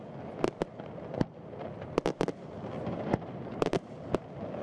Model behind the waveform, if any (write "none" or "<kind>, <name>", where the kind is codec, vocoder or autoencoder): none